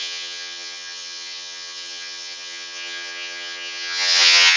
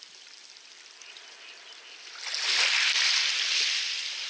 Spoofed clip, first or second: first